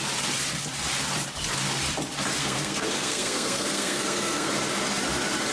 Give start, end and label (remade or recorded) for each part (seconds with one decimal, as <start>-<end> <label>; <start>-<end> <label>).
0.0-2.4 recorded; 2.4-4.5 remade; 4.5-5.5 recorded

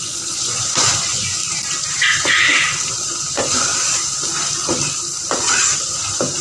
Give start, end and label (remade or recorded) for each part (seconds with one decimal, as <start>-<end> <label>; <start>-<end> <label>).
0.0-1.4 remade; 1.4-3.3 recorded; 3.3-3.7 remade; 3.7-6.4 recorded